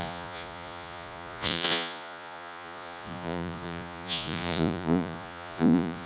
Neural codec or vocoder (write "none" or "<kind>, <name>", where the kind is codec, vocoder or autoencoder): vocoder, Vocos